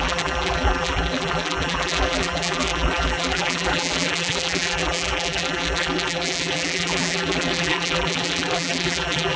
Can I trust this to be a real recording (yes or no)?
no